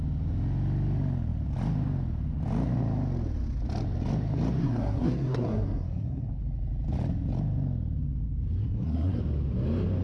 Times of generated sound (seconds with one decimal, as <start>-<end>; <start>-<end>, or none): 4.6-6.3; 8.6-9.2